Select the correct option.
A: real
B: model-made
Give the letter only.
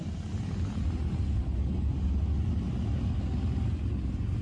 A